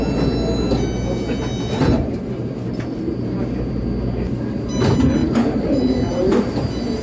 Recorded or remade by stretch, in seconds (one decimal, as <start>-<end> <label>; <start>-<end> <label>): 0.0-5.2 recorded; 5.2-6.1 remade; 6.1-7.0 recorded